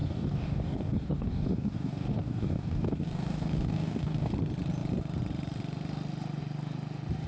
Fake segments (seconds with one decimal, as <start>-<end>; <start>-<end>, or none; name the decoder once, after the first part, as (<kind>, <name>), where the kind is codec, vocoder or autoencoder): 0.0-4.3 (codec, DAC)